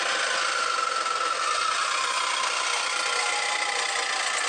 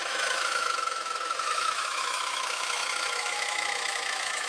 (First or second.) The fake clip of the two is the second